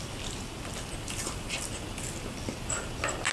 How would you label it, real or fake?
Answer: real